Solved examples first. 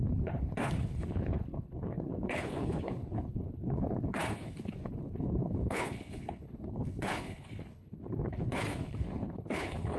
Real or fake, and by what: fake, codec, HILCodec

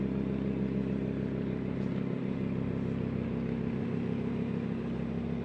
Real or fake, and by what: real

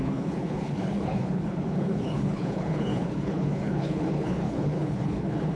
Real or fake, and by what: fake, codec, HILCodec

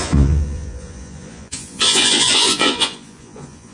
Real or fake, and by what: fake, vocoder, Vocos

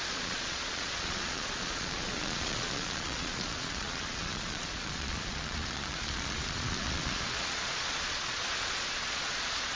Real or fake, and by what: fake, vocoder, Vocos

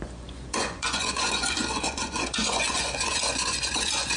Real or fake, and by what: fake, vocoder, Vocos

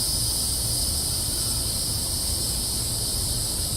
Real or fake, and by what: real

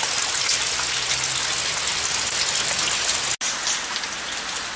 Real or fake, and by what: real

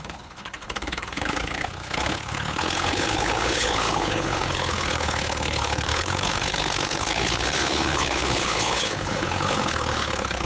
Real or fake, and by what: fake, codec, HILCodec